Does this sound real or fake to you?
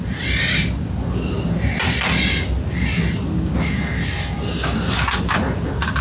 real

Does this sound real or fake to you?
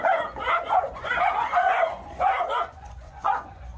fake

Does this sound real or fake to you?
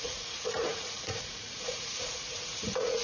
fake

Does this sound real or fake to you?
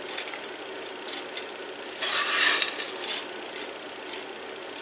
real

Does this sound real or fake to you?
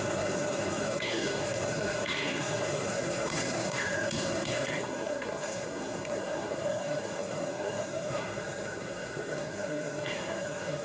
fake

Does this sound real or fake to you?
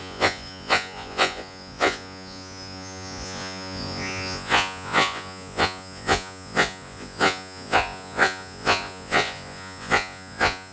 fake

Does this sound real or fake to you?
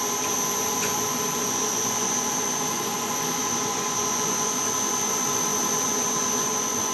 fake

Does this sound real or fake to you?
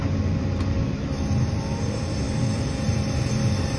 fake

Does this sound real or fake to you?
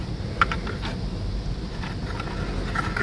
real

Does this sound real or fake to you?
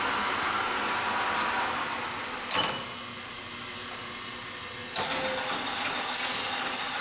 real